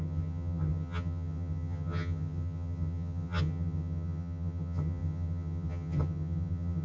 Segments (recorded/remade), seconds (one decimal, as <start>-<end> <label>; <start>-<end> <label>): 0.0-6.8 remade